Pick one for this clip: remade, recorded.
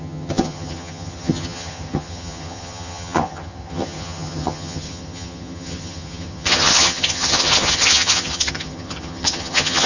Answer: remade